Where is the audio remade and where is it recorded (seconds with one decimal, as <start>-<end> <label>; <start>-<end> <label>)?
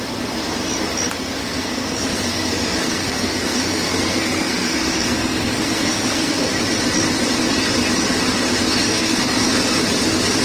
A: 0.0-1.4 recorded; 1.4-6.5 remade; 6.5-8.9 recorded; 8.9-9.4 remade; 9.4-10.4 recorded